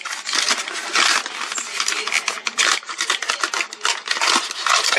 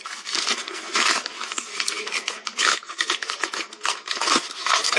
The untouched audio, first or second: first